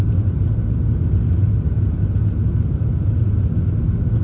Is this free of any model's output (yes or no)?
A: yes